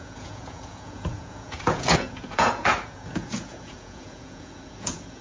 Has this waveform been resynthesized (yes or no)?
yes